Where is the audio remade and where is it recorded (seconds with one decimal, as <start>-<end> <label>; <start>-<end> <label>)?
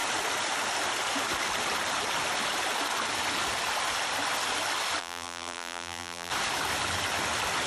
0.0-5.0 recorded; 5.0-6.3 remade; 6.3-7.7 recorded